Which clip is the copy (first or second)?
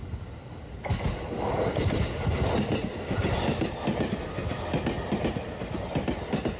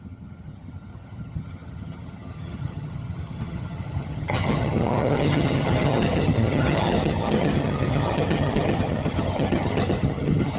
second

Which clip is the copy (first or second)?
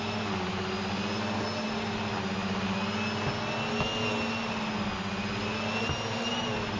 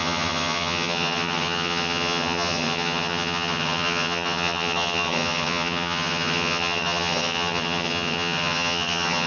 second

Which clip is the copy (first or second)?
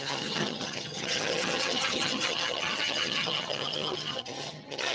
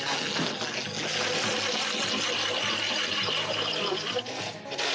first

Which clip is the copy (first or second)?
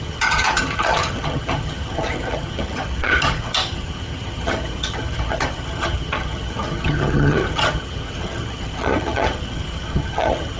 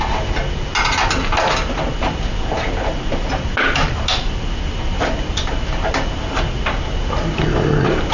first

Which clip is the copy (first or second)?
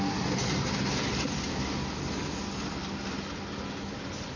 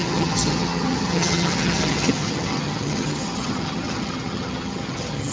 second